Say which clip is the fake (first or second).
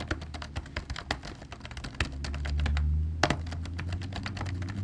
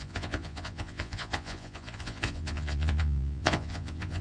second